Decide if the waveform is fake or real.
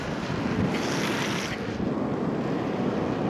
real